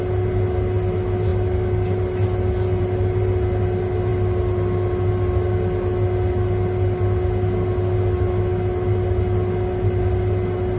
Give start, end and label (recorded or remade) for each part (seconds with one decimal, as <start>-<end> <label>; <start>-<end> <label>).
0.0-10.8 recorded